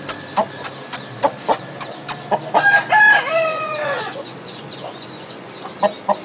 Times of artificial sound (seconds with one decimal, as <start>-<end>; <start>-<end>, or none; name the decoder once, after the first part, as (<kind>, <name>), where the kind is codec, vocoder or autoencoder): 3.5-5.7 (vocoder, Vocos)